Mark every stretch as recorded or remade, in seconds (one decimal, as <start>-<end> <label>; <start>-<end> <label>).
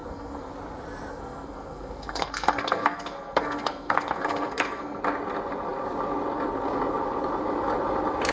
0.0-0.5 remade; 0.5-1.1 recorded; 1.1-5.0 remade; 5.0-8.3 recorded